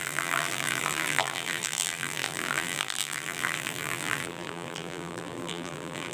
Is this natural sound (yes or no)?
no